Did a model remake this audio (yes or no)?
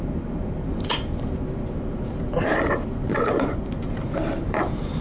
yes